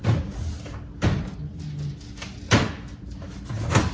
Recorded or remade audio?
recorded